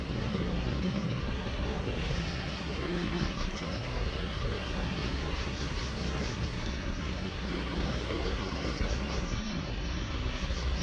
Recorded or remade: remade